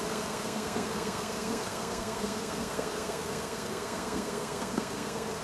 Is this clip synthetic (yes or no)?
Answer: yes